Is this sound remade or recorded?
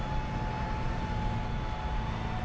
recorded